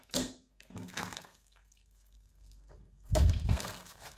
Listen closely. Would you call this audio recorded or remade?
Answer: remade